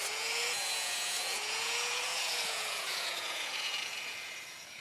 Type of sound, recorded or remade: remade